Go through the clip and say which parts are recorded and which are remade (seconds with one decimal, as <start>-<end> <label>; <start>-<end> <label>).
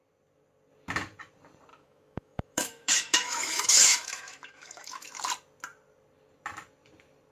0.0-1.7 recorded; 1.7-5.2 remade; 5.2-7.3 recorded